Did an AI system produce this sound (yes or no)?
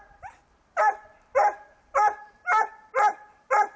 yes